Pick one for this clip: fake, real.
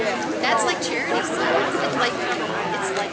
real